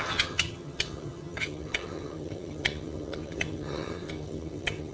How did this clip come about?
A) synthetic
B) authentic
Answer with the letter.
A